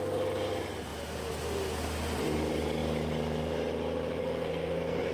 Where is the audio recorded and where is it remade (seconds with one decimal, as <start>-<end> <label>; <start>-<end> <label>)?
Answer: 0.0-4.2 recorded; 4.2-5.1 remade